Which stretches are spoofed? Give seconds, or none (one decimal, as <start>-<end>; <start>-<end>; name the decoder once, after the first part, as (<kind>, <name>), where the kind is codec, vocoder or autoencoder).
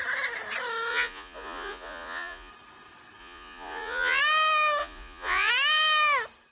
0.9-2.5 (vocoder, Vocos); 3.2-4.2; 4.8-5.5